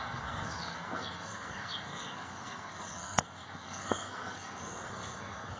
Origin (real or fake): fake